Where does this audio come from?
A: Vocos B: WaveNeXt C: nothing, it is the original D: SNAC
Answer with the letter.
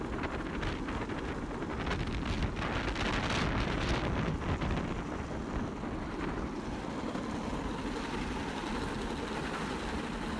C